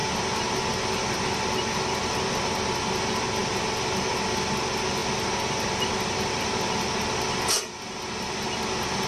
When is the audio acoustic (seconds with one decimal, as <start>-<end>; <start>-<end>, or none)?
0.0-9.1